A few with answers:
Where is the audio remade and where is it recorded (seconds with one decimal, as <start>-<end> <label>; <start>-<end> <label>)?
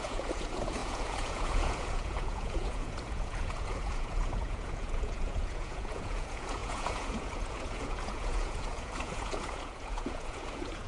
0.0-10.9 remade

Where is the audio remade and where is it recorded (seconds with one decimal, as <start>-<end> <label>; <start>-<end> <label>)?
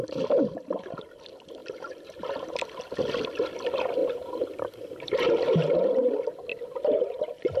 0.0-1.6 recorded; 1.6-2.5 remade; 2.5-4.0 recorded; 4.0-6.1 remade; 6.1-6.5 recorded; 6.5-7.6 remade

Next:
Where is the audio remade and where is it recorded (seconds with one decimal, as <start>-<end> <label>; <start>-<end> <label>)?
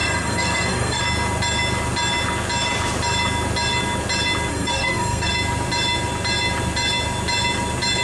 0.0-1.0 remade; 1.0-4.5 recorded; 4.5-5.3 remade; 5.3-8.0 recorded